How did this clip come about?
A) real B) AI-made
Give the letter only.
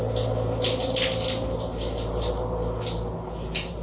A